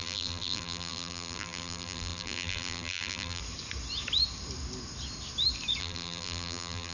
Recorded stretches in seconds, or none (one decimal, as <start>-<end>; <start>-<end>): 3.4-5.8